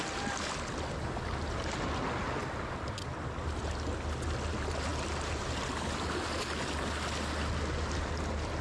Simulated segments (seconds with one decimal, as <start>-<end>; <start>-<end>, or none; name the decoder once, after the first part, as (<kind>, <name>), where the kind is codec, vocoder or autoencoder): none